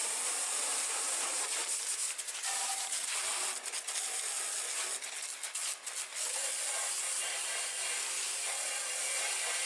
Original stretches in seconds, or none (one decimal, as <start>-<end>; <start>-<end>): 3.0-9.7